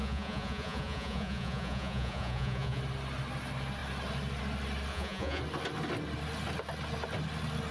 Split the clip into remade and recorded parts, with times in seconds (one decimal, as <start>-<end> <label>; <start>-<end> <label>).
0.0-2.8 remade; 2.8-4.9 recorded; 4.9-5.4 remade; 5.4-7.7 recorded